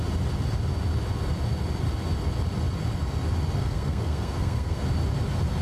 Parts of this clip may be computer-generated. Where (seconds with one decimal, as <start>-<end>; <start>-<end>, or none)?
3.6-4.8